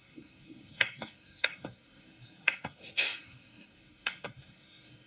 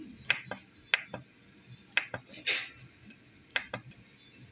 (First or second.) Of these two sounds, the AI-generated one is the first